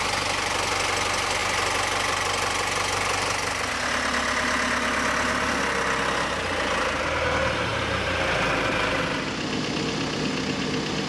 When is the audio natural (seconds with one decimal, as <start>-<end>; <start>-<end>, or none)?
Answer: 0.0-11.1